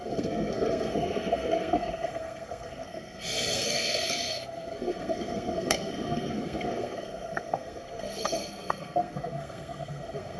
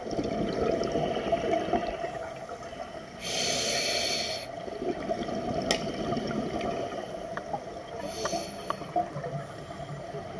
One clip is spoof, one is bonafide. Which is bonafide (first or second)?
second